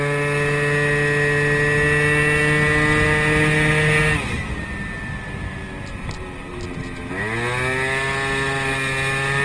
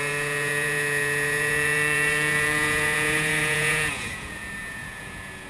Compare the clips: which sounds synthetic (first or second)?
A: second